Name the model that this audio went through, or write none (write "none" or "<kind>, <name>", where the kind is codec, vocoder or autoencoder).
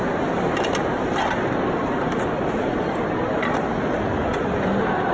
none